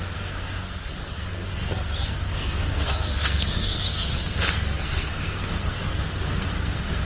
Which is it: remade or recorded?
remade